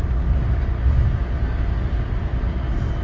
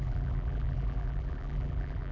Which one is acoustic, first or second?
first